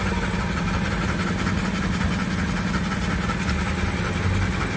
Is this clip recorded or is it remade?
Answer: recorded